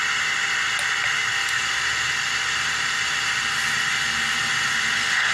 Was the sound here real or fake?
real